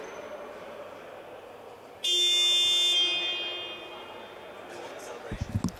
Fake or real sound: real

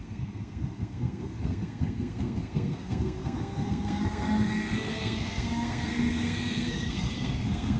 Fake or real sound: fake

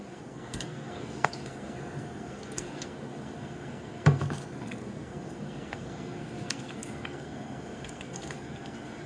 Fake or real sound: fake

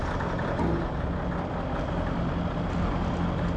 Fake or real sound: real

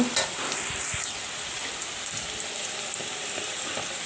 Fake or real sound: real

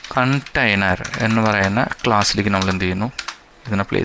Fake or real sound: real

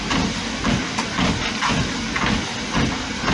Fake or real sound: real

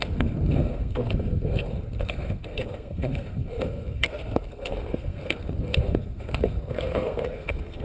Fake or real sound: fake